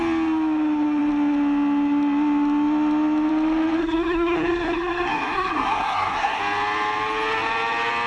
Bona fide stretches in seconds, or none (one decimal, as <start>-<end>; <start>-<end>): 0.0-3.8; 6.4-8.1